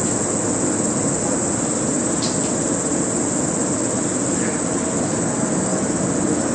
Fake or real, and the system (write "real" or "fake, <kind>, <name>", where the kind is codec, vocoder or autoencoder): real